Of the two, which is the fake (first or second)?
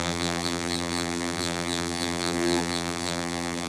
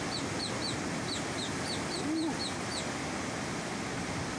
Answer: first